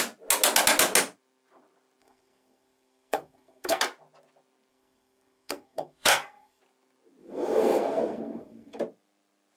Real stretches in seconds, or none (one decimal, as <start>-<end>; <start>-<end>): 0.0-2.0; 3.8-4.7; 6.6-7.2; 8.8-9.6